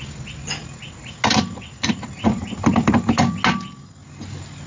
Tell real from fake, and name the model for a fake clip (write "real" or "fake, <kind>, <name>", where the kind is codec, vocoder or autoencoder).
real